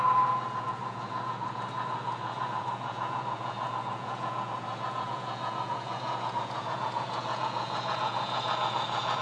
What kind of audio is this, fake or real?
fake